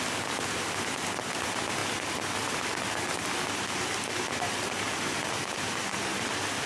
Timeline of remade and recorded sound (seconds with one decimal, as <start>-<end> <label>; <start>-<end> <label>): 0.0-6.7 recorded